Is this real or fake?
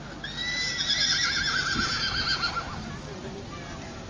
real